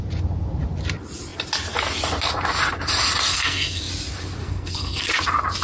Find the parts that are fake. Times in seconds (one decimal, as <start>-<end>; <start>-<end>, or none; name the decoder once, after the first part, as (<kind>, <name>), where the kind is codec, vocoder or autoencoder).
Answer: 3.3-3.9 (codec, SNAC); 4.4-5.1